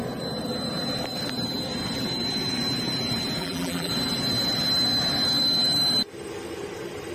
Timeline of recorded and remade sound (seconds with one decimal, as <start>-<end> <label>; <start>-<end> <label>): 0.0-3.4 recorded; 3.4-3.9 remade; 3.9-7.1 recorded

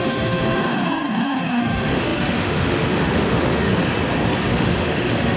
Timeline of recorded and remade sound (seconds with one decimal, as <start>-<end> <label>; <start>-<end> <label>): 0.0-3.7 remade; 3.7-4.5 recorded; 4.5-5.4 remade